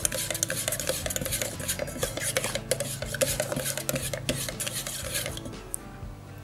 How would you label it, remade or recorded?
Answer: recorded